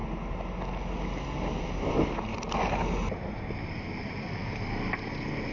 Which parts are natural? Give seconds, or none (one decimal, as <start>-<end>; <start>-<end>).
0.0-5.5